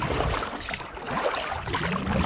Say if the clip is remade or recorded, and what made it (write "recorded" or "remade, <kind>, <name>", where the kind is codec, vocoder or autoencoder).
recorded